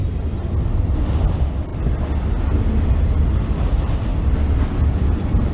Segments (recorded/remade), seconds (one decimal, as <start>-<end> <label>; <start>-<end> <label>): 0.0-0.8 recorded; 0.8-1.7 remade; 1.7-3.3 recorded; 3.3-4.1 remade; 4.1-4.8 recorded; 4.8-5.5 remade